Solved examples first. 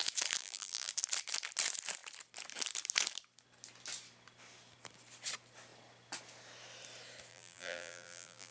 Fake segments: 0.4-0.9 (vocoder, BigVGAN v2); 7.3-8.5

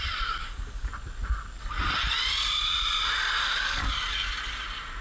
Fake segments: 0.4-0.9 (codec, DAC); 3.4-3.9

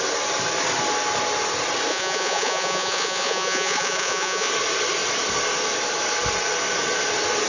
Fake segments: 1.9-4.5 (vocoder, Vocos)

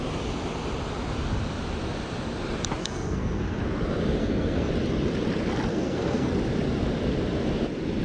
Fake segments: 2.8-3.6 (codec, SNAC); 4.2-4.7; 5.7-6.3

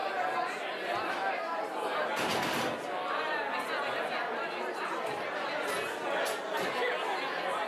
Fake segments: none

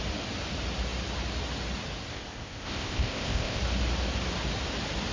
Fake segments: 2.1-3.6 (codec, ZipCodec)